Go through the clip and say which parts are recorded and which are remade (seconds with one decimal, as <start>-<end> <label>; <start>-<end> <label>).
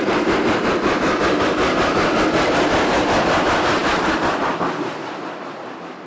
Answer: 0.0-6.1 recorded